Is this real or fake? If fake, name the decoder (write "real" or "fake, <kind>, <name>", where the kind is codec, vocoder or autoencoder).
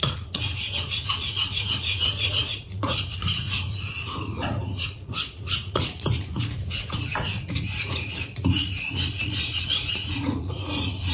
fake, vocoder, Vocos